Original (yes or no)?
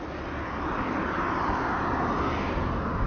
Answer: yes